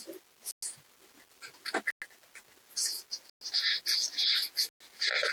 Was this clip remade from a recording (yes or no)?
no